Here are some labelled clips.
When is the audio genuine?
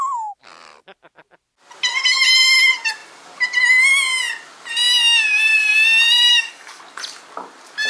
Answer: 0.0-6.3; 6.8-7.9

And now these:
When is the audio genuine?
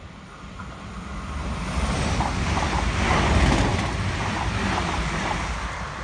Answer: 0.0-6.0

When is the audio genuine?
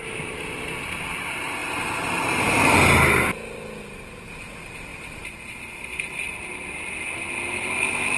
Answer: 0.0-1.6; 2.8-8.2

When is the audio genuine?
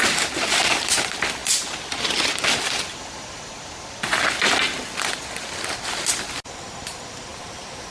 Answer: 0.0-7.3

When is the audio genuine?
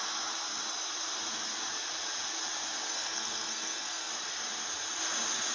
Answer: 0.0-2.9; 4.1-5.5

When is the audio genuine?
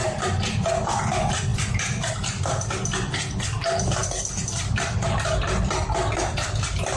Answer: 0.0-1.5; 2.5-4.0; 5.1-7.0